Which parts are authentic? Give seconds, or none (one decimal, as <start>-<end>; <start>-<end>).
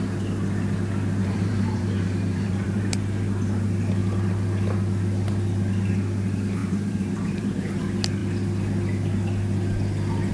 0.0-1.2; 2.8-6.6; 7.8-10.3